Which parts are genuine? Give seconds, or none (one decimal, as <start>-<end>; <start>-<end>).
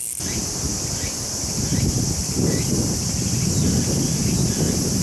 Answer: 0.0-2.2; 3.0-5.0